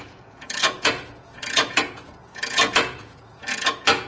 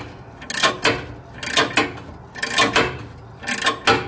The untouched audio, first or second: second